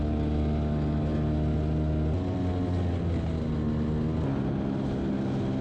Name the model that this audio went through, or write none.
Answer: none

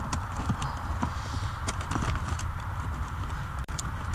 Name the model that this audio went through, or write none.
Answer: vocoder, BigVGAN v2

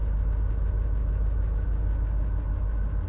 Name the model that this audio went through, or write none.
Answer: none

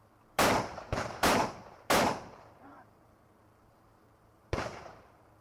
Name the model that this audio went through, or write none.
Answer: vocoder, BigVGAN v2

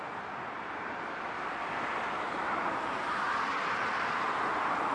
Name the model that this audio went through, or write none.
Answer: none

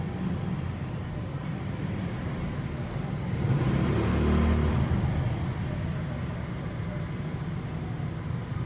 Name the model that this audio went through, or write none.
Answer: none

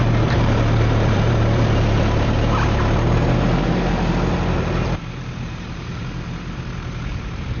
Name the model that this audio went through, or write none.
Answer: vocoder, BigVGAN v2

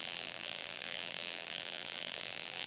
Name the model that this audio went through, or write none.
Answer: vocoder, BigVGAN v2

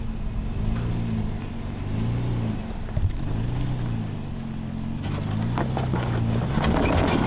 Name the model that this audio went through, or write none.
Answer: none